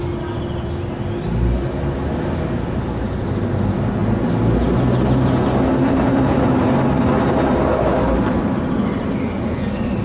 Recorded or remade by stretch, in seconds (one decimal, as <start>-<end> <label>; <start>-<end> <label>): 0.0-10.0 recorded